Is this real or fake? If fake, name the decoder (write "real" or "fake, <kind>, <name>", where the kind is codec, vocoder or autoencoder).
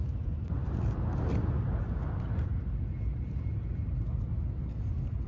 real